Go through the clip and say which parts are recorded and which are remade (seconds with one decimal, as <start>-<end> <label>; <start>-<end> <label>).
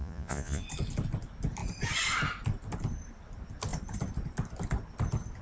0.0-0.6 remade; 0.6-5.4 recorded